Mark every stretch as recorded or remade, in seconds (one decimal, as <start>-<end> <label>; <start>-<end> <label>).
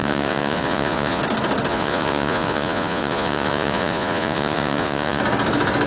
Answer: 0.0-1.2 remade; 1.2-1.7 recorded; 1.7-5.2 remade; 5.2-5.9 recorded